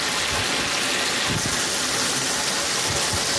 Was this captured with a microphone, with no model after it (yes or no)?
yes